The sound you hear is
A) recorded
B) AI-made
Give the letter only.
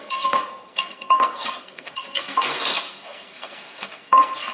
B